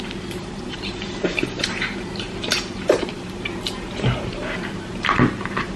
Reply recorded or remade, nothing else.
remade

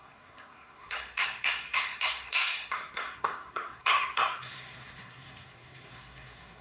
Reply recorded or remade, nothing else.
remade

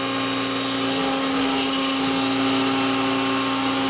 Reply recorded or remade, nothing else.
recorded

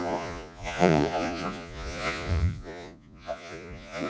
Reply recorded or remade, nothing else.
remade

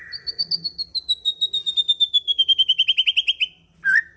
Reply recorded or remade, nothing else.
recorded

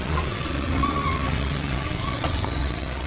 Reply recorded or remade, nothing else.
remade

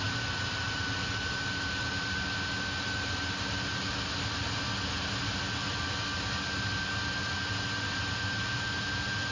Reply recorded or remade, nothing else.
recorded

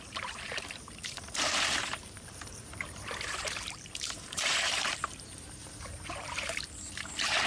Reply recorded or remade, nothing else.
remade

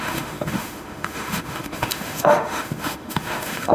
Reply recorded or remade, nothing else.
remade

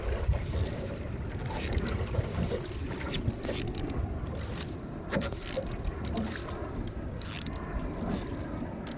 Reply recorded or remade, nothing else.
remade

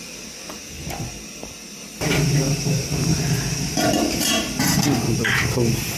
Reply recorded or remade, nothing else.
remade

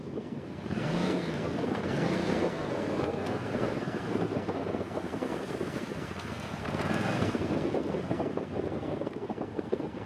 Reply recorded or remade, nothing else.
remade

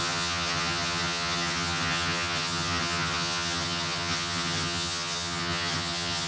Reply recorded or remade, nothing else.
remade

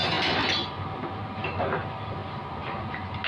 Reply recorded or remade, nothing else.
recorded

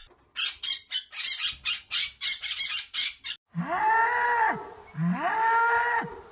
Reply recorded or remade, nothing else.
recorded